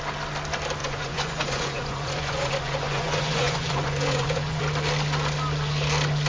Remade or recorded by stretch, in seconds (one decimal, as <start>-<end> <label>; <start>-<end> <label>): 0.0-0.8 recorded; 0.8-4.6 remade; 4.6-6.3 recorded

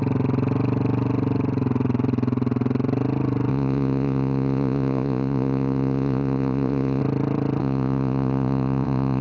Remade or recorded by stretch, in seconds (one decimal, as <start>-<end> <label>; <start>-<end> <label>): 0.0-3.5 recorded; 3.5-7.0 remade; 7.0-7.6 recorded; 7.6-9.2 remade

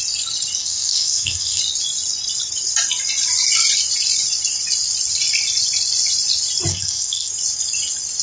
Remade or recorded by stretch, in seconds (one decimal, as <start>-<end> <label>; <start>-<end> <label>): 0.0-0.6 recorded; 0.6-1.6 remade; 1.6-6.7 recorded; 6.7-7.3 remade; 7.3-8.2 recorded